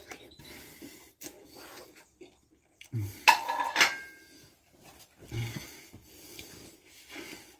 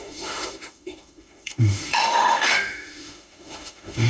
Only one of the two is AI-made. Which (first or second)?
second